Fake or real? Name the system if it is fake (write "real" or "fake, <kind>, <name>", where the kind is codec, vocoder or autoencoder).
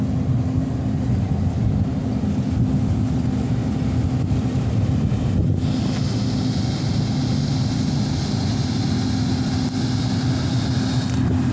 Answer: real